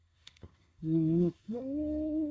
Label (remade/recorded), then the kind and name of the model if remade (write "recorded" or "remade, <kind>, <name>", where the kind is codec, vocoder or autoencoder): remade, codec, SNAC